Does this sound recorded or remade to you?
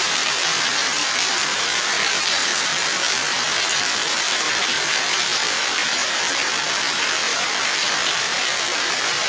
remade